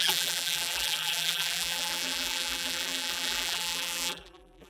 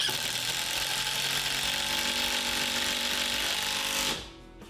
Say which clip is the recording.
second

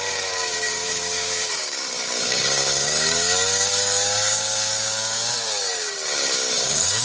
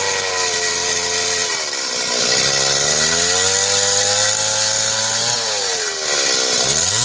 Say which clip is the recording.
second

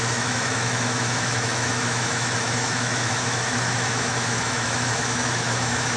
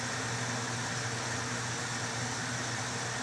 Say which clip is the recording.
second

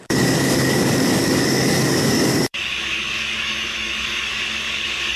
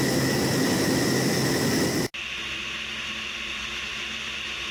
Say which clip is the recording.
second